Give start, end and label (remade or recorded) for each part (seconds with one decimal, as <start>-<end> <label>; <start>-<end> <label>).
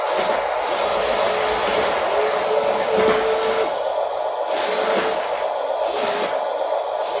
0.0-7.2 recorded